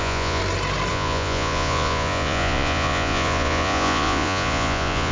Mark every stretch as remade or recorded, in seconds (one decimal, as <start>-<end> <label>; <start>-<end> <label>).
0.0-0.4 remade; 0.4-0.9 recorded; 0.9-5.1 remade